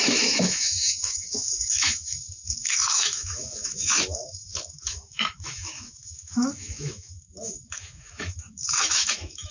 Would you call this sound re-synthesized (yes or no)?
yes